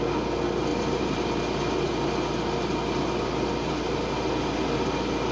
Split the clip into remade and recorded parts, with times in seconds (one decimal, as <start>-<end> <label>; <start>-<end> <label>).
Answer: 0.0-0.7 recorded; 0.7-1.2 remade; 1.2-5.3 recorded